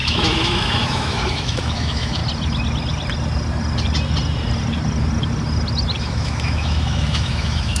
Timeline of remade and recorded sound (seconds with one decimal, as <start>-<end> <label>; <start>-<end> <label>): 0.0-2.2 remade; 2.2-6.0 recorded; 6.0-7.8 remade